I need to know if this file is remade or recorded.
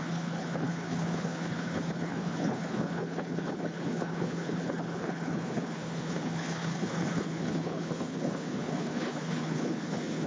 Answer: remade